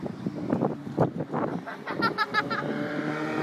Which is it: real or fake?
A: real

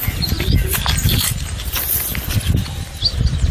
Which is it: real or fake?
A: real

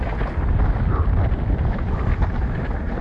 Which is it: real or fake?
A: real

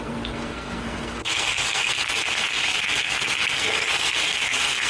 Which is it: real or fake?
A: fake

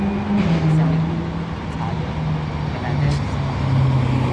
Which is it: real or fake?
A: real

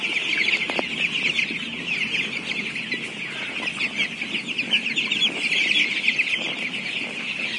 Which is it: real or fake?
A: real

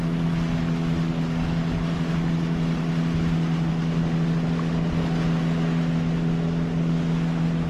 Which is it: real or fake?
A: real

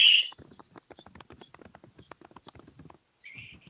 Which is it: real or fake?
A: real